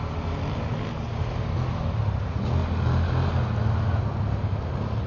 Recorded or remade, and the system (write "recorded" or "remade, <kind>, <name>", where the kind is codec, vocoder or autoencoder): recorded